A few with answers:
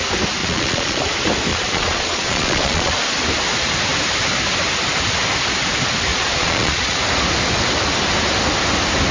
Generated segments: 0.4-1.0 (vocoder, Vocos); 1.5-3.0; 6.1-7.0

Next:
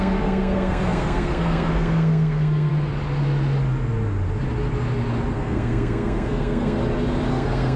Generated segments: 0.0-2.7 (codec, SNAC); 5.3-6.8; 7.3-7.8

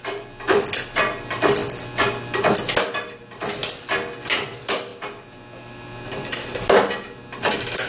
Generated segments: 0.0-1.6 (vocoder, BigVGAN v2); 2.8-3.6; 4.3-7.9

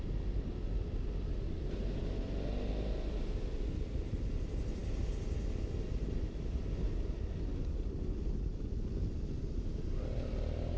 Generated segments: none

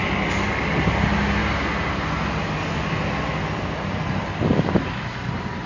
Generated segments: none

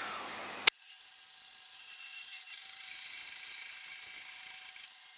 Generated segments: 0.0-0.4 (vocoder, BigVGAN v2); 1.4-5.2

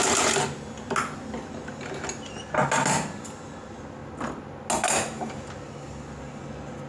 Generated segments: none

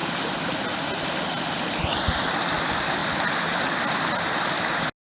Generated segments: none